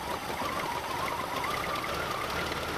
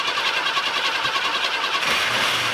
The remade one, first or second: second